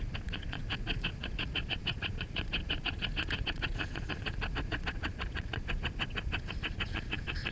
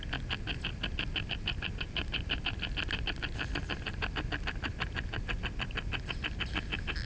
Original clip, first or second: second